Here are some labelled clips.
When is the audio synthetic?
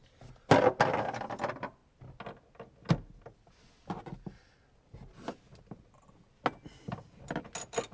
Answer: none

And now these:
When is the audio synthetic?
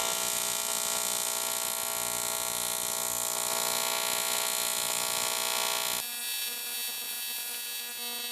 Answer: none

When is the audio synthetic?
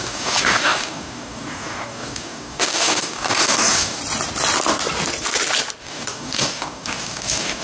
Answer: 0.0-4.0; 5.8-7.6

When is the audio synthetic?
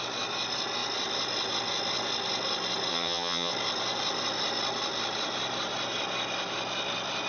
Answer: 2.9-3.5